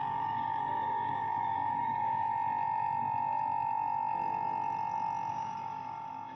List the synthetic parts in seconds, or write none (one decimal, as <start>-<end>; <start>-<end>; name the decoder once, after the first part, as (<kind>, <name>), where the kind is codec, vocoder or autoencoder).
0.0-2.3 (codec, DAC); 5.3-6.4